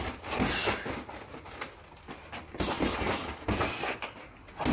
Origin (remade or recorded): recorded